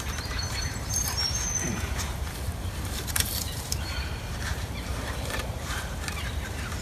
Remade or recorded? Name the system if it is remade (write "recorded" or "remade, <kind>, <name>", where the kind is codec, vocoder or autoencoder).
remade, vocoder, BigVGAN v2